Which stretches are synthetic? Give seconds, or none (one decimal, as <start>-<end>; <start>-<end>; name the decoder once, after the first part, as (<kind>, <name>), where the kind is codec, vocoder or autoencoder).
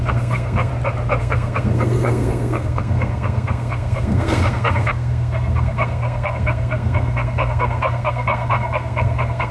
0.0-0.7 (codec, SNAC); 1.2-9.5